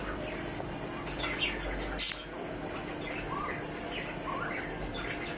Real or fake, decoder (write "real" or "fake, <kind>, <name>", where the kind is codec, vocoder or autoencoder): real